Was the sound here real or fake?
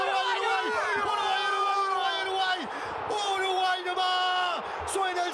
real